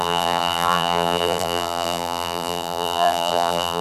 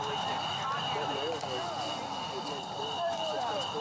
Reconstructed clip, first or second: first